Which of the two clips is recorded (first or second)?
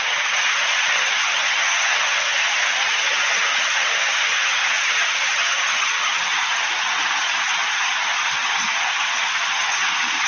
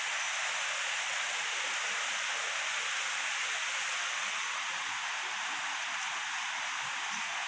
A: second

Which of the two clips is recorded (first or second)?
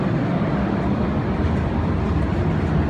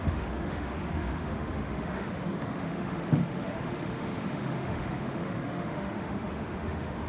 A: first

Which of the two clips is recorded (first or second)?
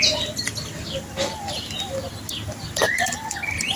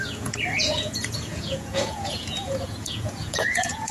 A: first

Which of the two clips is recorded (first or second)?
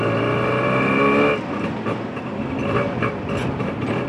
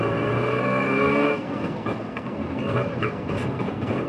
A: first